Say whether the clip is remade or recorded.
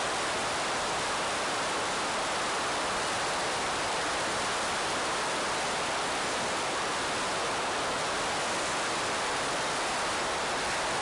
recorded